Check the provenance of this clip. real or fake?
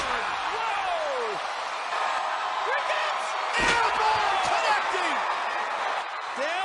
real